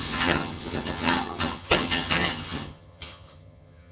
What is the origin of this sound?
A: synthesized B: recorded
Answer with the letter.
A